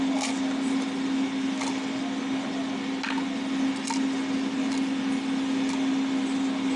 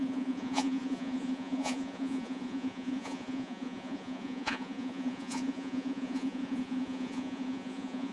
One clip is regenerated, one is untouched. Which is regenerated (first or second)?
second